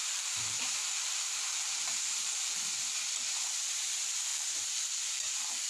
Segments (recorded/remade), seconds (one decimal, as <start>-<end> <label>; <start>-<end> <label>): 0.0-2.6 remade; 2.6-4.3 recorded; 4.3-5.7 remade